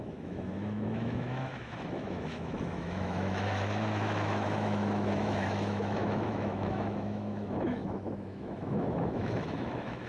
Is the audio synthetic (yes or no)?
yes